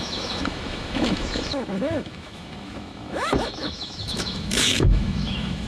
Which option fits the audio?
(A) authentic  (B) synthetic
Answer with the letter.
B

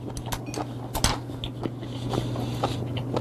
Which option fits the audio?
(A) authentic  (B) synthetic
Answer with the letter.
A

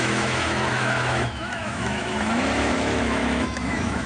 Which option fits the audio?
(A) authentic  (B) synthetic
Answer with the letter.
B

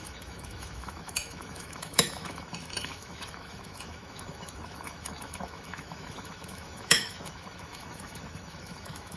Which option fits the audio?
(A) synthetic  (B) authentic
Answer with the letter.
A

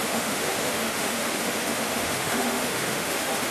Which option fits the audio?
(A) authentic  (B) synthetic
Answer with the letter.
B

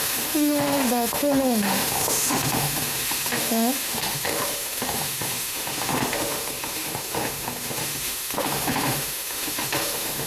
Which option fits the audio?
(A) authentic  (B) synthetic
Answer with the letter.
B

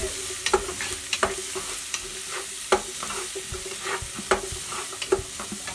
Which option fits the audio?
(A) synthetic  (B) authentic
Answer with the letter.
B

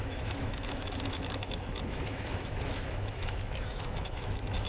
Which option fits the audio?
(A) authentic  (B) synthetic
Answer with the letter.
B